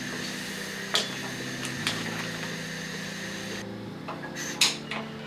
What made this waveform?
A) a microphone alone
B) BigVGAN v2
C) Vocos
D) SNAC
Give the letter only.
A